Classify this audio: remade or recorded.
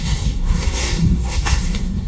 remade